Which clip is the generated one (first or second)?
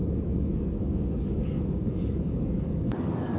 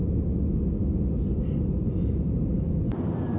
first